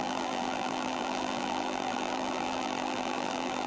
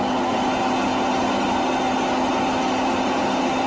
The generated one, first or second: first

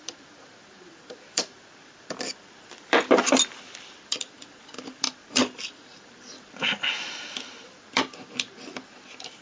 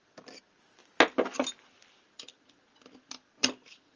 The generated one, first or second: first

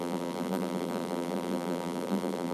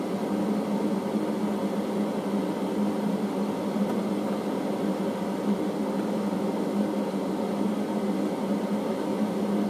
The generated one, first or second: first